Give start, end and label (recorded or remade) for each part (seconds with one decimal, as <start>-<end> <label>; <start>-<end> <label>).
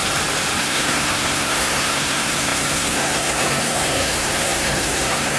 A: 0.0-0.6 recorded; 0.6-5.4 remade